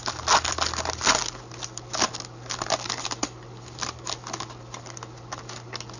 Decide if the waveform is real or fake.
real